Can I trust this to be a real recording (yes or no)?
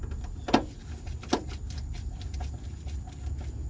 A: yes